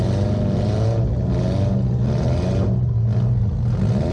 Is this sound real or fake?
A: real